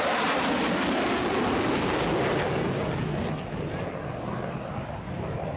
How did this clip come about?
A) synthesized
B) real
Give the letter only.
B